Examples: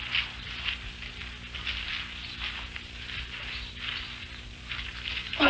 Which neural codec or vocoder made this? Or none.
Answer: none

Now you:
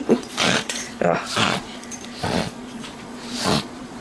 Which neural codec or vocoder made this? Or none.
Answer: vocoder, Vocos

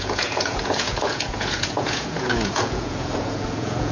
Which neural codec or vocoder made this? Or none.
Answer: vocoder, Vocos